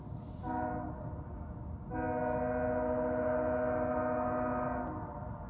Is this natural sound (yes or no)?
yes